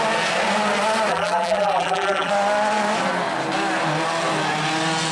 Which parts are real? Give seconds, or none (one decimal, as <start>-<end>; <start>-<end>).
0.0-1.1; 2.3-5.1